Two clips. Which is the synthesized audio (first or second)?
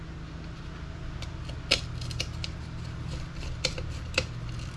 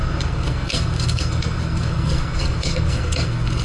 second